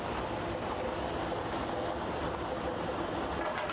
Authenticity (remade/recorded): recorded